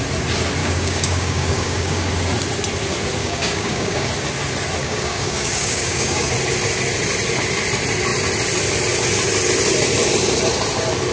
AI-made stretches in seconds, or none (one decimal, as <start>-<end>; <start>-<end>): 0.6-2.1; 3.2-4.1; 4.8-6.3